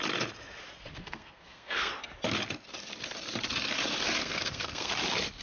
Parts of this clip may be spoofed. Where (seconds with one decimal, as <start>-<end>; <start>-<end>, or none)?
0.9-1.9; 4.2-4.9